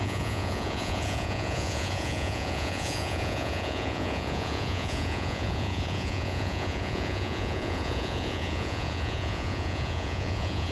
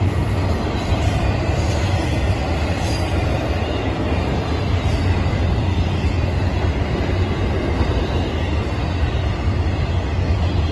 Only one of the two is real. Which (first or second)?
second